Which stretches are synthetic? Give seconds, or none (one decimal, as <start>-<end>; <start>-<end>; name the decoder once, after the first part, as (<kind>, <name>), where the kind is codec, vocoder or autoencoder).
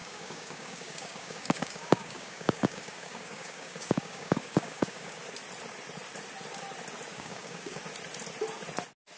0.0-5.2 (codec, DAC); 7.1-7.8